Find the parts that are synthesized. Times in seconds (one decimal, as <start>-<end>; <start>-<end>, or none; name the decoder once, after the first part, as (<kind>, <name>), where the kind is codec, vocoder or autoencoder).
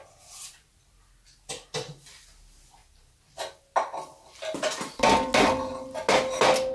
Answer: none